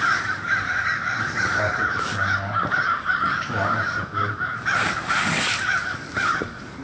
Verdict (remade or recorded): remade